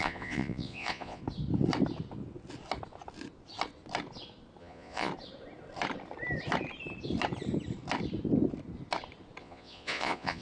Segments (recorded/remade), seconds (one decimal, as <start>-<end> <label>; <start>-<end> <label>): 0.0-1.2 remade; 1.2-4.6 recorded; 4.6-5.1 remade; 5.1-9.4 recorded; 9.4-10.4 remade